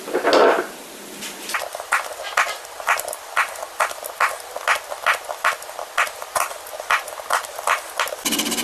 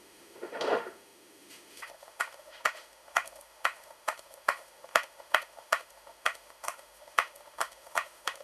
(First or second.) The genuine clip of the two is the first